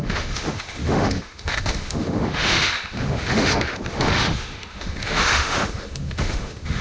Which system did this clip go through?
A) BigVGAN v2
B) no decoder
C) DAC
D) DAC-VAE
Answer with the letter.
D